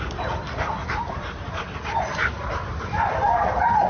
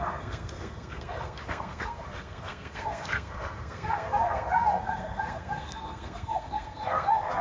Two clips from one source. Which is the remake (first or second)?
second